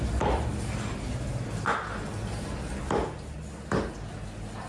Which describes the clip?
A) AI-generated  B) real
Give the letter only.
B